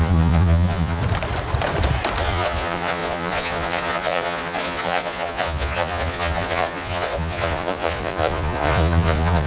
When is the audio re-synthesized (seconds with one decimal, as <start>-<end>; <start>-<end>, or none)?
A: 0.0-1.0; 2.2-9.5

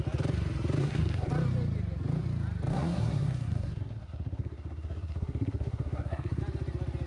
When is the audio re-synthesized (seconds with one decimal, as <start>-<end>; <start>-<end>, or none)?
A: 0.8-1.3; 2.7-6.4

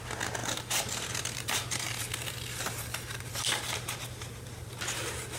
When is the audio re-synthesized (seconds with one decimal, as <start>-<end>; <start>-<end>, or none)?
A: 0.4-3.6